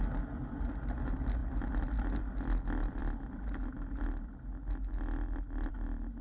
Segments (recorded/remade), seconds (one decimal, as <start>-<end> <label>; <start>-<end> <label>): 0.0-6.2 recorded

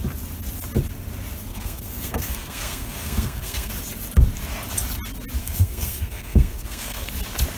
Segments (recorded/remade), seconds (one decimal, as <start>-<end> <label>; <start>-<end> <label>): 0.0-1.5 recorded; 1.5-3.7 remade; 3.7-5.4 recorded; 5.4-7.1 remade; 7.1-7.6 recorded

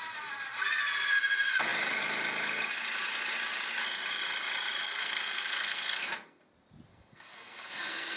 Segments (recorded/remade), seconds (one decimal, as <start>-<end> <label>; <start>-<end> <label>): 0.0-4.8 recorded; 4.8-6.4 remade; 6.4-6.9 recorded; 6.9-8.2 remade

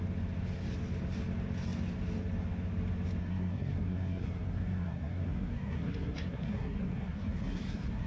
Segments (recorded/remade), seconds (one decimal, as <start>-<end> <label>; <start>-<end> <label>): 0.0-3.2 recorded; 3.2-8.1 remade

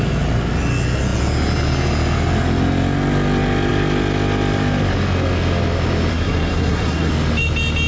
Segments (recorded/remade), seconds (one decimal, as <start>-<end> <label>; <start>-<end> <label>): 0.0-6.1 recorded; 6.1-7.1 remade; 7.1-7.9 recorded

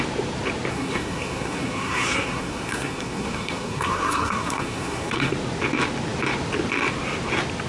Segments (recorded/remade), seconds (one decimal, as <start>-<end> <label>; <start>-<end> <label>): 0.0-0.7 recorded; 0.7-5.3 remade; 5.3-7.7 recorded

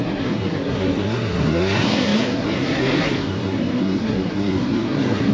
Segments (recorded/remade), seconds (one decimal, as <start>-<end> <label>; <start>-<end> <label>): 0.0-5.3 remade